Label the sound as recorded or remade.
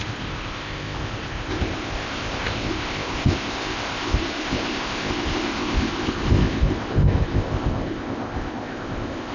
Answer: remade